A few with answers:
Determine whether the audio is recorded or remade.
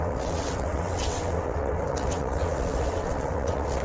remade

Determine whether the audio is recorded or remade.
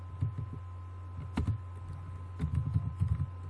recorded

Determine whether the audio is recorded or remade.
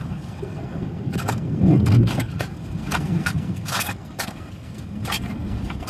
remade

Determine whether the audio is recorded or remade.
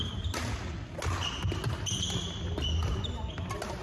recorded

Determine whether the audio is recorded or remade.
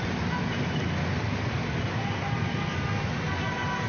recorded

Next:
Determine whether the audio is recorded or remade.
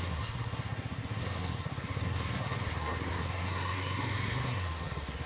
remade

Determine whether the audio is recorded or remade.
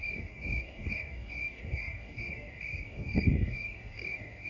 remade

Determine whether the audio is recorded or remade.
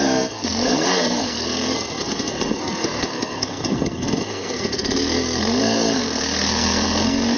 remade